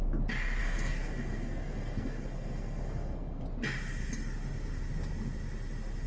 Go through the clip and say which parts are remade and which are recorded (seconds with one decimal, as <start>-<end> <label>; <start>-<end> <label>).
0.0-0.6 recorded; 0.6-3.4 remade; 3.4-6.1 recorded